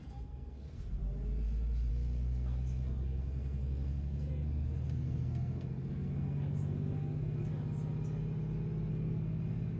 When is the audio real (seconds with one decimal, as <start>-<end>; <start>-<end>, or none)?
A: 1.0-1.9; 7.5-8.9